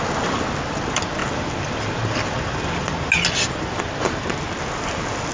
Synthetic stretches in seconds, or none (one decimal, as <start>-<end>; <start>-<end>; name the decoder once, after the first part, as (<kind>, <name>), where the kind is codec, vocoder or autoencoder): none